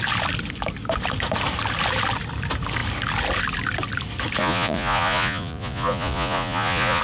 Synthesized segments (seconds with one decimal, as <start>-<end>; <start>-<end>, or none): 4.4-7.0